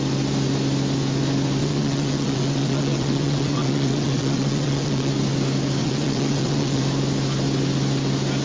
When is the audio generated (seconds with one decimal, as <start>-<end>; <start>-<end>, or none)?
1.6-5.1; 5.8-6.8

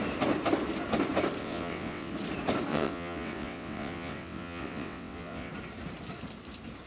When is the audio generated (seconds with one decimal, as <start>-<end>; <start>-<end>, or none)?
1.4-2.1; 2.7-5.5